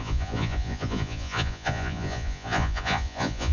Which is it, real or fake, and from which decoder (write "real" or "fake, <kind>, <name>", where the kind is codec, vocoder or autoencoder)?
fake, vocoder, Vocos